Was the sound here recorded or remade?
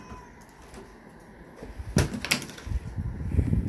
recorded